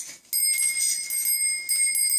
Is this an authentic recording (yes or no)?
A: yes